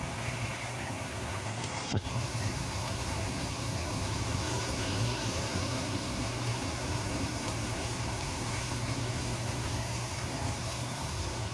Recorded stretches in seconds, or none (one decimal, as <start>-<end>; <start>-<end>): none